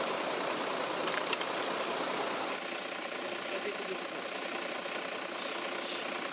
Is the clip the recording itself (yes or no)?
yes